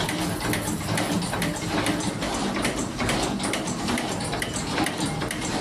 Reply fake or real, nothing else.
real